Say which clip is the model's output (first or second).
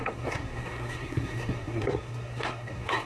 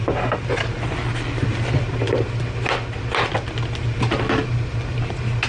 first